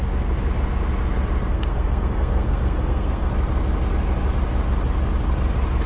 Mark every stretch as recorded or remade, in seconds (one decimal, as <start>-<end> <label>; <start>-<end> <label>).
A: 0.0-1.5 recorded; 1.5-3.3 remade; 3.3-5.9 recorded